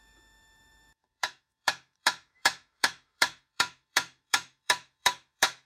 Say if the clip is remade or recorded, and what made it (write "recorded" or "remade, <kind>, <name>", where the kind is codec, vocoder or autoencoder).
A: remade, autoencoder, DAC-VAE